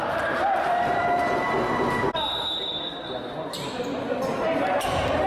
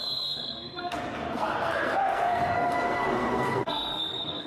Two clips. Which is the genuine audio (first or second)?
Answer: first